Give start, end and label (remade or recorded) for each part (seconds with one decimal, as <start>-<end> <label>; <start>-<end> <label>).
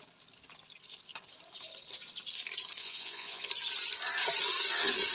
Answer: 0.0-2.8 recorded; 2.8-3.5 remade; 3.5-5.1 recorded